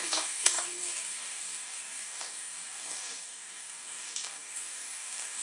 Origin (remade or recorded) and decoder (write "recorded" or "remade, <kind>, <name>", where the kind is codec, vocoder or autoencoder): remade, codec, DAC